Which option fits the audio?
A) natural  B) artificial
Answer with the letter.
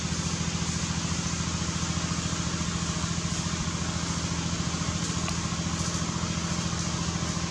A